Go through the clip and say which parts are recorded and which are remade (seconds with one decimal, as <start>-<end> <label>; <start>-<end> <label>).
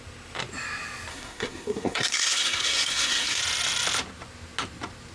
0.0-1.1 recorded; 1.1-3.4 remade; 3.4-5.1 recorded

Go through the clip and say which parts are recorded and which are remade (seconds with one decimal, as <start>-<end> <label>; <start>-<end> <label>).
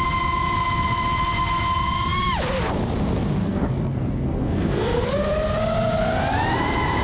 0.0-3.4 recorded; 3.4-5.1 remade; 5.1-7.0 recorded